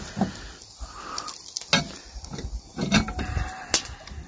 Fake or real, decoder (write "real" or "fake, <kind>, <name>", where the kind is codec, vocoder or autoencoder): real